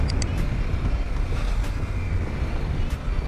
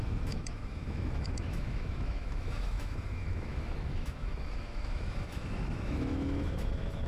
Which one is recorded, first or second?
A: first